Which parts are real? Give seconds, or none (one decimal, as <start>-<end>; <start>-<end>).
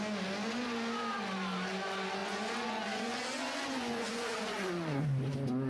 0.0-2.2; 5.0-5.7